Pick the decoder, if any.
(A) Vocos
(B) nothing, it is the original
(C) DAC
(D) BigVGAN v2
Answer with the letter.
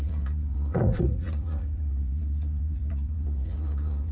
A